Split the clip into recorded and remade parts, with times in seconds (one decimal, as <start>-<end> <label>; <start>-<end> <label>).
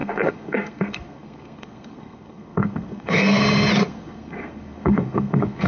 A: 0.0-3.4 remade; 3.4-3.8 recorded; 3.8-5.7 remade